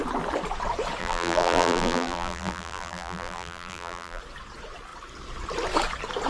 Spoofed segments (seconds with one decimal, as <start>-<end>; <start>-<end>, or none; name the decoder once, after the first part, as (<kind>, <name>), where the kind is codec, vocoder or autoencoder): 1.0-4.2 (vocoder, BigVGAN v2)